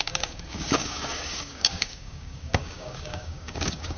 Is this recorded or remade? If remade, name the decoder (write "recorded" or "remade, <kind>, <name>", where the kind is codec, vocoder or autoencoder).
remade, codec, DAC